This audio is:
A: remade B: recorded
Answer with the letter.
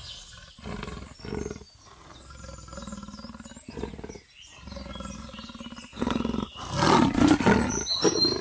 B